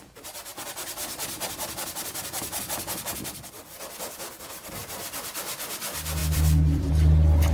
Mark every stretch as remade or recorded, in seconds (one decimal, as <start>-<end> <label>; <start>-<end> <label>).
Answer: 0.0-6.2 recorded; 6.2-6.9 remade; 6.9-7.5 recorded

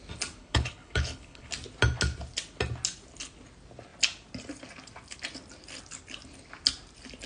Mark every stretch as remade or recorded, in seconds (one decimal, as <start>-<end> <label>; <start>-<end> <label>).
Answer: 0.0-0.4 recorded; 0.4-1.5 remade; 1.5-7.3 recorded

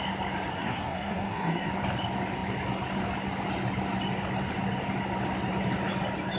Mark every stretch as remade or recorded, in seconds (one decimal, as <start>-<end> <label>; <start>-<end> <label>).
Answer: 0.0-0.5 recorded; 0.5-1.7 remade; 1.7-6.4 recorded

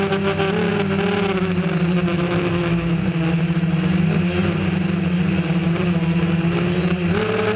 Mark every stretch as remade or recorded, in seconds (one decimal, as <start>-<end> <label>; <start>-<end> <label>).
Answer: 0.0-7.6 recorded

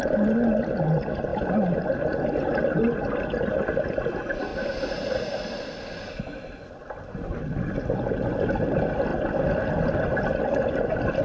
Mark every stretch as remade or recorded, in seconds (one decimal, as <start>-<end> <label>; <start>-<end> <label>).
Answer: 0.0-1.3 recorded; 1.3-2.0 remade; 2.0-4.5 recorded; 4.5-5.6 remade; 5.6-11.2 recorded

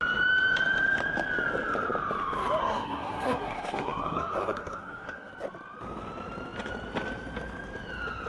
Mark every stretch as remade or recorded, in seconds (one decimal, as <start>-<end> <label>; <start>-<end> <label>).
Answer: 0.0-2.6 recorded; 2.6-5.3 remade; 5.3-8.3 recorded

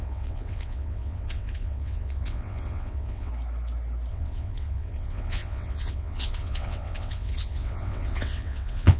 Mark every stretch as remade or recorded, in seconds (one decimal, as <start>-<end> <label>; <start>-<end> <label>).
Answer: 0.0-3.3 remade; 3.3-4.1 recorded; 4.1-9.0 remade